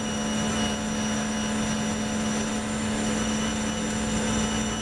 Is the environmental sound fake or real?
real